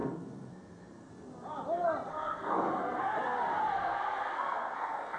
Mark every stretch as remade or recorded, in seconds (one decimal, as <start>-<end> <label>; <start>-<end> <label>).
0.0-1.1 remade; 1.1-2.1 recorded; 2.1-3.0 remade; 3.0-3.7 recorded; 3.7-5.2 remade